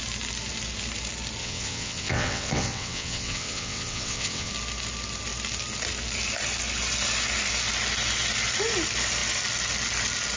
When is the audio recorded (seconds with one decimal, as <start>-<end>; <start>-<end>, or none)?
0.0-1.4; 4.5-10.4